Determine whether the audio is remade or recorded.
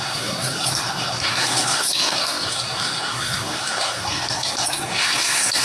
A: remade